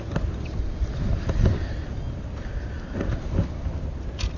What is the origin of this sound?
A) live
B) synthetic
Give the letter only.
A